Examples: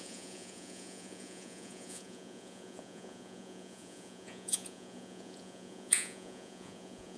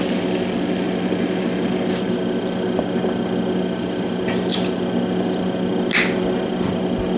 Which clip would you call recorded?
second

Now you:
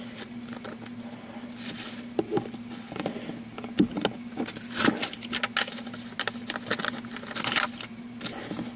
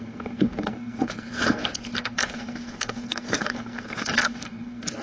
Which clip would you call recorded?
first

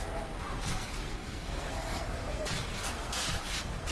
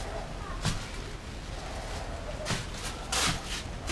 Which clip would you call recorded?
second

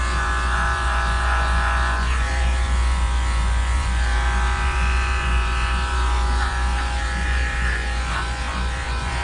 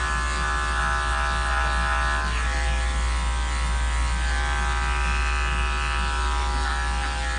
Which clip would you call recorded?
second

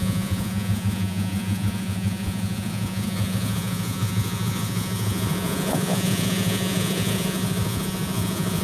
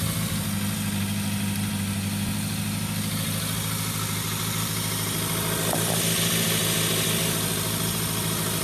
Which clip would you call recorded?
second